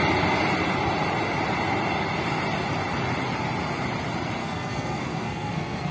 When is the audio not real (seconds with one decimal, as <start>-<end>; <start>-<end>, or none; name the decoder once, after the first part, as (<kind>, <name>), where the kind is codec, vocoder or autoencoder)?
4.4-5.9 (codec, SNAC)